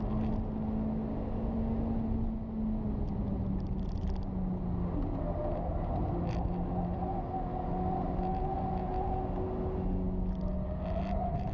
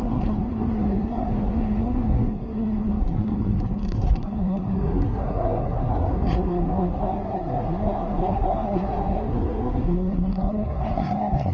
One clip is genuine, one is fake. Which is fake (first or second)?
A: second